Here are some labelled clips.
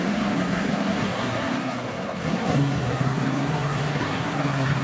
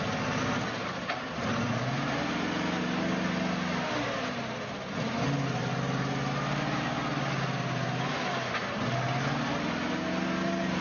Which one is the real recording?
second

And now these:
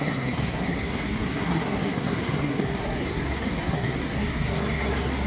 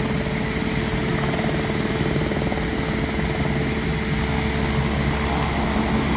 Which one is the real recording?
second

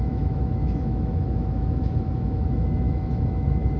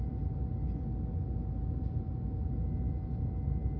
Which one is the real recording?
second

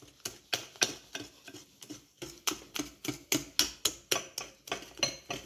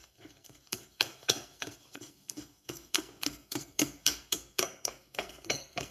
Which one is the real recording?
first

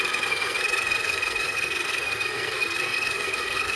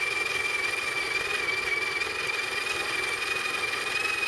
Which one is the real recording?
second